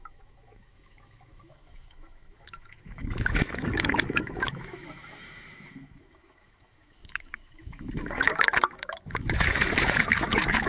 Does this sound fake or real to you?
fake